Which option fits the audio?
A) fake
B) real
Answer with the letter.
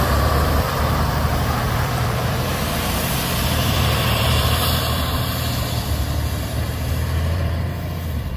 A